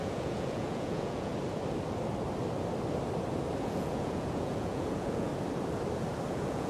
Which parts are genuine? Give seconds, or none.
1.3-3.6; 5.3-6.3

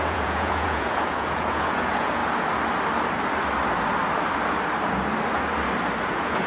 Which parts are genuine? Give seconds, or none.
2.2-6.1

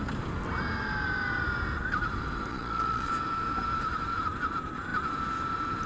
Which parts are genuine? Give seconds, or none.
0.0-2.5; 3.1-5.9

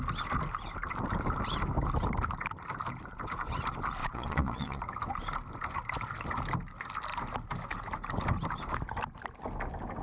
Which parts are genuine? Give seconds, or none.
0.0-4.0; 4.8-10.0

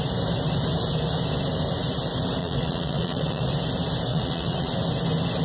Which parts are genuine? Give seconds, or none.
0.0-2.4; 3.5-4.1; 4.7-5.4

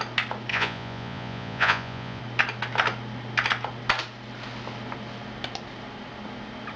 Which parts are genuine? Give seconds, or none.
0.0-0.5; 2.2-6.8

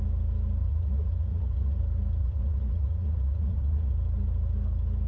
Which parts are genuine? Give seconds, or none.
0.0-0.6; 1.8-2.2; 3.9-5.1